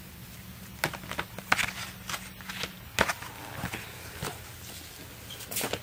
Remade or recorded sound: recorded